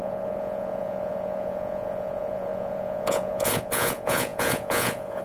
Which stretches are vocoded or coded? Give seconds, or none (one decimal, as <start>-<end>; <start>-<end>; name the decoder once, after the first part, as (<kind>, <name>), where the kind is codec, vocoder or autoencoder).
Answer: 0.0-5.2 (vocoder, Vocos)